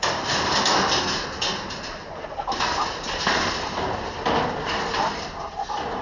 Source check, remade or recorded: recorded